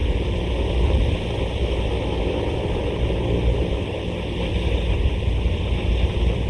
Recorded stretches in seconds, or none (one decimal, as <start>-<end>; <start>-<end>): 0.0-6.5